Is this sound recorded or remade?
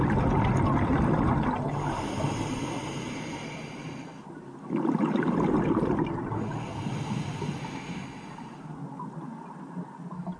recorded